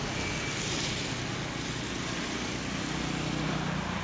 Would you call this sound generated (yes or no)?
no